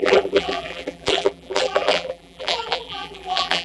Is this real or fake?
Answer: fake